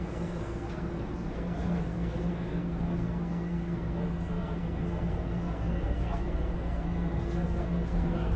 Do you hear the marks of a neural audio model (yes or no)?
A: yes